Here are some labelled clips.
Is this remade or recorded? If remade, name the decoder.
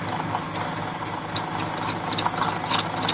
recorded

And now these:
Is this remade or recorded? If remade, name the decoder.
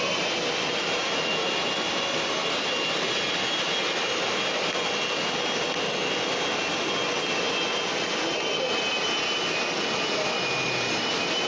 recorded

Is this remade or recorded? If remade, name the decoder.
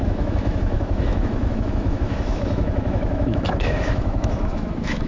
remade, autoencoder, DAC-VAE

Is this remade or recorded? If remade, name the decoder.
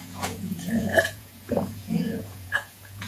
remade, vocoder, Vocos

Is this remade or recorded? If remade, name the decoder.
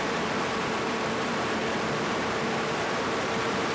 remade, vocoder, BigVGAN v2